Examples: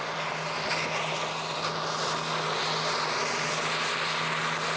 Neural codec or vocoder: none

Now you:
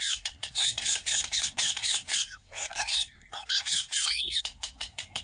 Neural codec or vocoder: codec, SNAC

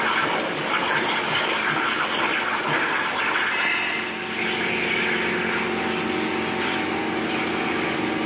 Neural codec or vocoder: none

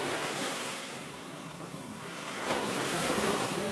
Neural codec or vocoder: codec, SNAC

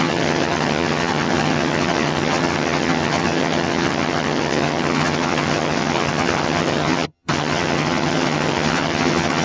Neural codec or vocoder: vocoder, HiFi-GAN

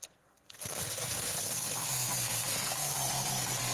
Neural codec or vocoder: codec, SNAC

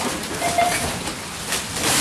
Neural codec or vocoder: none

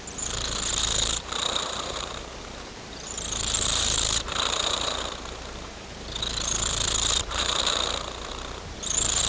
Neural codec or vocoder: vocoder, BigVGAN v2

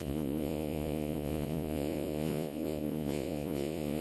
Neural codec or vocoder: vocoder, Vocos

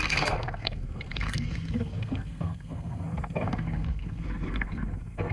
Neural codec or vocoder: codec, SNAC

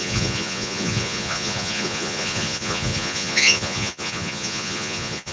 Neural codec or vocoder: vocoder, Vocos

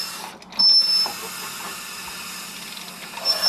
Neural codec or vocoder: none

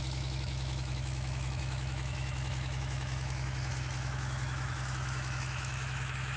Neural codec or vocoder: autoencoder, DAC-VAE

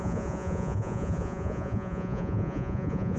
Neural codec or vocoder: vocoder, Vocos